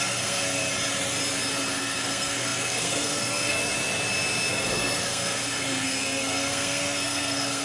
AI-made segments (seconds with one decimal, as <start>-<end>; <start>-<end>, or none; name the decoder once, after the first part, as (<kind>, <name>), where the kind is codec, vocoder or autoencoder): 0.0-0.6 (codec, SNAC); 1.8-3.6; 4.5-7.6